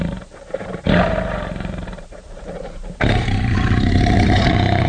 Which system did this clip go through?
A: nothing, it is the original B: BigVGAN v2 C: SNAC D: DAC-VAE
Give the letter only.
B